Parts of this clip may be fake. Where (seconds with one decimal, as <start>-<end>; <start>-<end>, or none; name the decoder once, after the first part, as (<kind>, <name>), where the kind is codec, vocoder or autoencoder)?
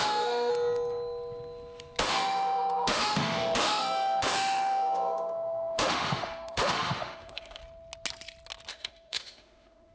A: 0.0-0.5 (autoencoder, DAC-VAE); 2.0-7.6; 8.7-9.9